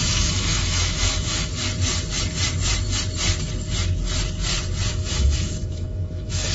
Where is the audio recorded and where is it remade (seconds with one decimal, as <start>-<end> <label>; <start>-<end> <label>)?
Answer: 0.0-1.5 remade; 1.5-4.9 recorded; 4.9-6.5 remade